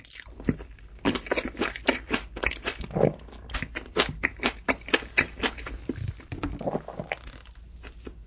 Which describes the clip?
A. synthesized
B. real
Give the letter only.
B